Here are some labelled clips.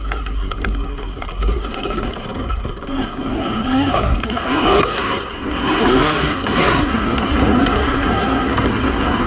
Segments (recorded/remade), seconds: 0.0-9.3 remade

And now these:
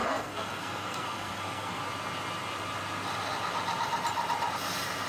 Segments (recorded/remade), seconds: 0.0-1.8 remade; 1.8-5.1 recorded